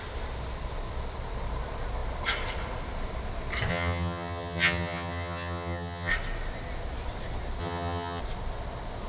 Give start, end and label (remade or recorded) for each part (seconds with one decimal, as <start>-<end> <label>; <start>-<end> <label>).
0.0-3.7 recorded; 3.7-6.1 remade; 6.1-7.6 recorded; 7.6-8.2 remade; 8.2-9.1 recorded